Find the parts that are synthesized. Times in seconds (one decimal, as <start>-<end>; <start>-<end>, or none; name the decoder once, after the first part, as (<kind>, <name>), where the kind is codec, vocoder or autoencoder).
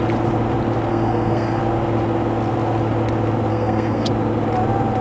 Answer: 0.9-1.6 (codec, SNAC); 3.5-4.1